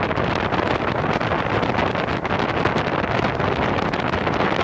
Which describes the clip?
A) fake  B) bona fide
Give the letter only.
B